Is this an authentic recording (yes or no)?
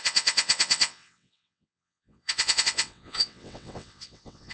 no